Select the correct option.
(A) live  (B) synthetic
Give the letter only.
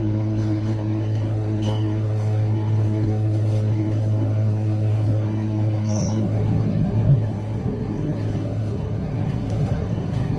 B